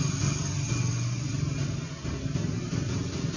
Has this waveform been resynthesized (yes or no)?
no